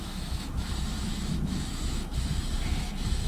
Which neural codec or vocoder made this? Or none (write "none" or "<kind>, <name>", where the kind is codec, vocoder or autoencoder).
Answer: autoencoder, DAC-VAE